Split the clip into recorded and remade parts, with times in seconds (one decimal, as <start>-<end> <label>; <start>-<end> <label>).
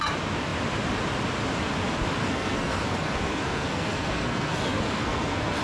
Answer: 0.0-2.2 recorded; 2.2-5.6 remade